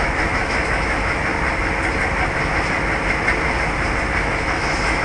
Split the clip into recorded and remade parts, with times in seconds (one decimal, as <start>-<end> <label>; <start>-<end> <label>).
0.0-1.3 remade; 1.3-4.2 recorded; 4.2-5.0 remade